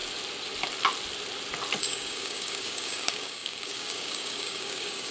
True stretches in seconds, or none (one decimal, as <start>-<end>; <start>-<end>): 0.0-1.8

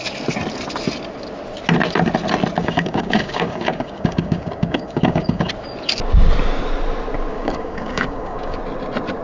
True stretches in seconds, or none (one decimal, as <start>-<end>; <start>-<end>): 0.0-2.6; 5.5-7.3; 8.6-9.2

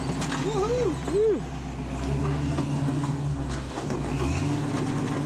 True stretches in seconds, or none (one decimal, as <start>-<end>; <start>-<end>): 0.0-2.2; 4.7-5.3

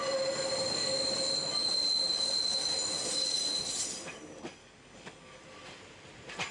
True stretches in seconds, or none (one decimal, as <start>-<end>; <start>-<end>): 0.0-4.6; 5.4-6.5

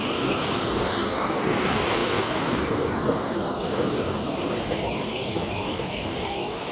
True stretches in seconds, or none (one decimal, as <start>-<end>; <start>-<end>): none

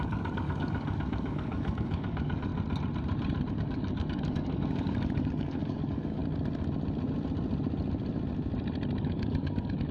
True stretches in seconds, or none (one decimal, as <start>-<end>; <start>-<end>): 2.5-3.5; 6.2-9.0

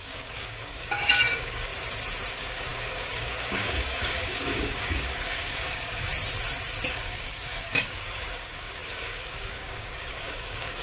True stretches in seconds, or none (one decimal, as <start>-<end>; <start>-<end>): 1.7-2.3; 6.1-6.9